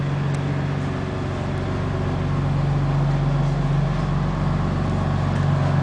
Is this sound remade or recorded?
recorded